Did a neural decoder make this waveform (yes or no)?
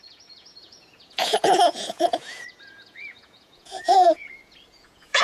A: yes